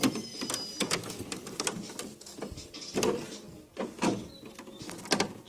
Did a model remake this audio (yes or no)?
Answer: no